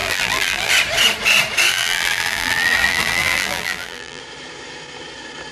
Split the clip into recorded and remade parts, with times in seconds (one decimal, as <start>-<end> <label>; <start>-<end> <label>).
0.0-0.7 remade; 0.7-1.7 recorded; 1.7-4.2 remade; 4.2-5.5 recorded